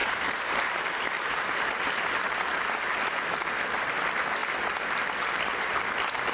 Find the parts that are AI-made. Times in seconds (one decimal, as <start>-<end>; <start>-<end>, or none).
none